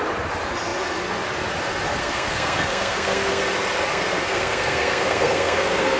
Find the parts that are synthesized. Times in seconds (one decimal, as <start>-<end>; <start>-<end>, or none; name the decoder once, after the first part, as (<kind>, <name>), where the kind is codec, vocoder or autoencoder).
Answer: 2.0-3.4 (codec, SNAC); 3.9-6.0